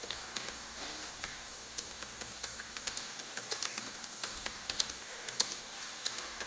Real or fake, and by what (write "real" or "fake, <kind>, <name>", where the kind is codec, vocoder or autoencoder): fake, codec, DAC